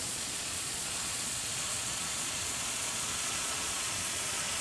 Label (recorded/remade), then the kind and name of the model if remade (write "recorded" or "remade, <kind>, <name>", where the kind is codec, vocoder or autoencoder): remade, vocoder, Vocos